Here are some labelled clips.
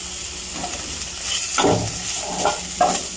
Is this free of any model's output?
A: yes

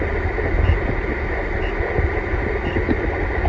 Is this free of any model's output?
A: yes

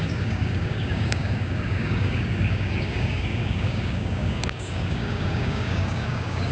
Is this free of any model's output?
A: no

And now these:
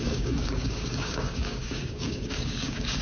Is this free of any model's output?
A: no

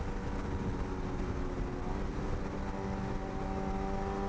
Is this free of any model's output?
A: yes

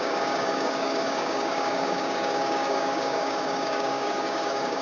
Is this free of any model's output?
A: no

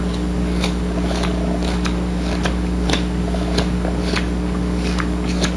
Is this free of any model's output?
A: no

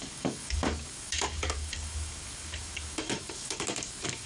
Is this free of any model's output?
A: no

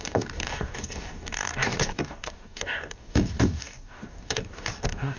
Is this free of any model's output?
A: no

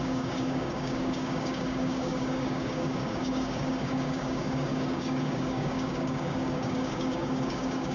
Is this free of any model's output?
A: no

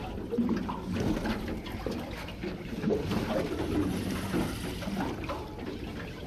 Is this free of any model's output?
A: yes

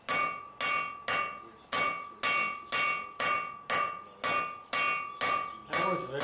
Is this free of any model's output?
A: yes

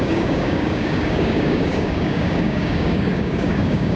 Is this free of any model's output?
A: no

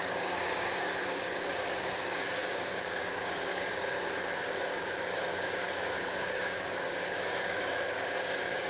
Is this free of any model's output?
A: no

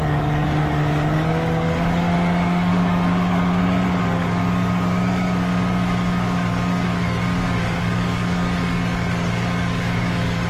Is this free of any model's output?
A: no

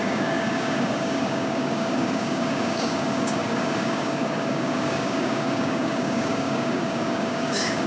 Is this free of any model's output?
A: no